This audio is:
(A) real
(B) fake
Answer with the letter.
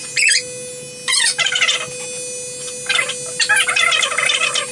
A